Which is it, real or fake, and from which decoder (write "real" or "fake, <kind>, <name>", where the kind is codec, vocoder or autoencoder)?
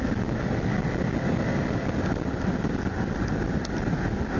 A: real